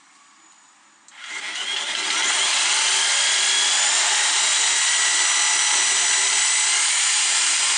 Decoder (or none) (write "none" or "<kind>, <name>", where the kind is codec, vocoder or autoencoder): none